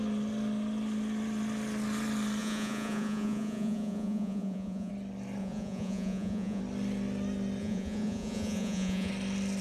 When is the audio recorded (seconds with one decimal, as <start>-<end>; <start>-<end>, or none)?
0.0-2.4; 4.9-5.4; 6.6-7.6; 9.1-9.6